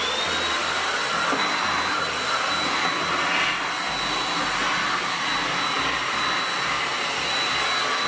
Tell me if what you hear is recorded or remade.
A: recorded